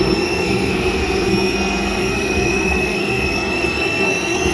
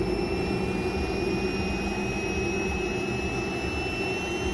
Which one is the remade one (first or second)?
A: first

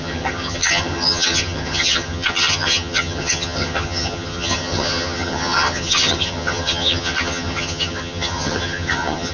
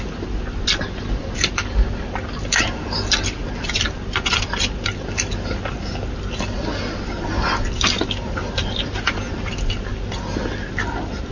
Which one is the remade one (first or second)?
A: first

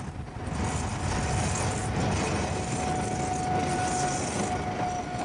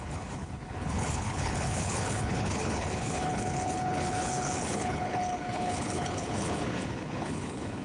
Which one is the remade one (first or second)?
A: second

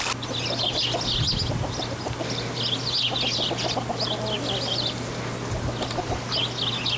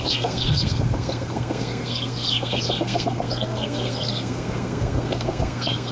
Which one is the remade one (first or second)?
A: second